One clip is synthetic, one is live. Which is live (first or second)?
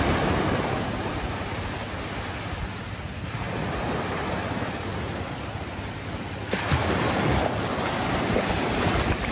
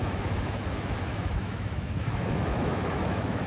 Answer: first